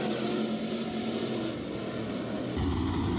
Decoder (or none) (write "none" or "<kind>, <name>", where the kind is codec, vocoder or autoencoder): none